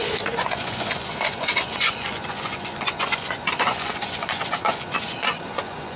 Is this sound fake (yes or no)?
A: yes